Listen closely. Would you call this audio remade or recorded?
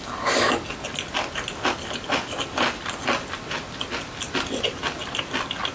recorded